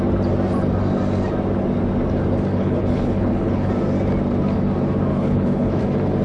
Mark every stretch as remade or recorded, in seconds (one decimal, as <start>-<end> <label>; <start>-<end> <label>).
0.0-2.5 recorded; 2.5-3.7 remade; 3.7-5.1 recorded; 5.1-5.8 remade; 5.8-6.2 recorded